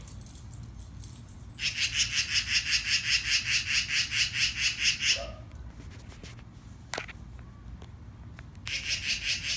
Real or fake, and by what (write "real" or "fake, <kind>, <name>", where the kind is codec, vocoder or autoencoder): real